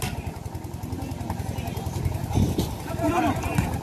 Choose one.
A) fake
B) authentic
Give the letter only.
B